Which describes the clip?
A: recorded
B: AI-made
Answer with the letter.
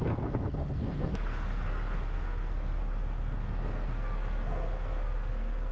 B